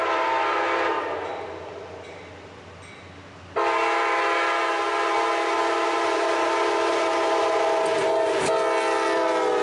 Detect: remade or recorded recorded